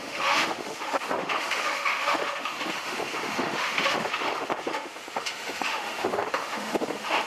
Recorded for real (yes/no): no